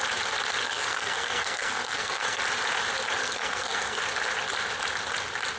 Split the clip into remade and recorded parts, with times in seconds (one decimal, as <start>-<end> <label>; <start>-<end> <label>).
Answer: 0.0-0.6 recorded; 0.6-2.4 remade; 2.4-3.2 recorded; 3.2-4.0 remade; 4.0-5.6 recorded